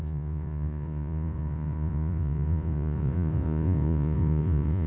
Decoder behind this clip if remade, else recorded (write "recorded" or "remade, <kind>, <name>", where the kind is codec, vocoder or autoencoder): remade, vocoder, Vocos